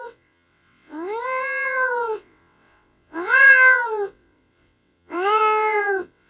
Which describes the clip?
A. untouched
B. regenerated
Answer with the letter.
B